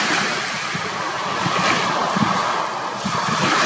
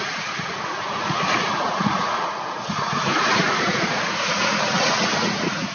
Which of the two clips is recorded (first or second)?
first